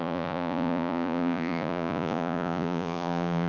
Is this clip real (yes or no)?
no